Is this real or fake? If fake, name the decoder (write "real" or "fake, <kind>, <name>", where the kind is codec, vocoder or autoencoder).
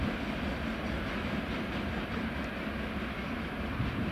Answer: real